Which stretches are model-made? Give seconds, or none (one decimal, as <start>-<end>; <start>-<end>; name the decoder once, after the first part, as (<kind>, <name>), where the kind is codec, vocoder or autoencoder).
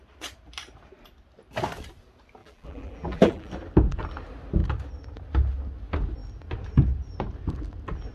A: 2.4-3.5 (vocoder, BigVGAN v2)